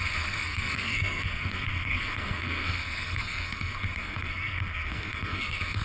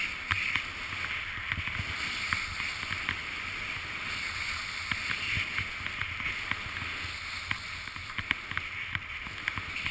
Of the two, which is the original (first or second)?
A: second